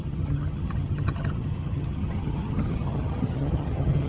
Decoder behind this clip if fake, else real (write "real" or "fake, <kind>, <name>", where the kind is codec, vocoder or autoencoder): fake, vocoder, HiFi-GAN